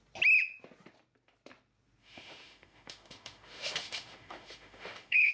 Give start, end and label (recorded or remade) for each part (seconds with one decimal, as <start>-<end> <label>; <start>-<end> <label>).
0.0-2.0 recorded; 2.0-5.3 remade